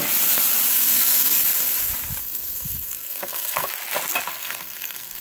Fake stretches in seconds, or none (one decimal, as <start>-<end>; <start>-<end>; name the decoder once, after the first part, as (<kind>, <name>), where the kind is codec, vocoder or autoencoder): 0.7-1.4 (codec, SNAC); 2.2-3.7; 4.3-5.2